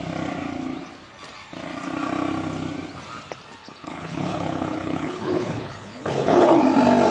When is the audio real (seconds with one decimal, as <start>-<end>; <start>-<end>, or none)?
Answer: 0.0-3.6; 6.6-7.1